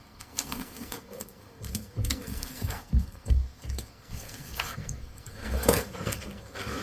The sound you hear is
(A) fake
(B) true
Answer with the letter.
A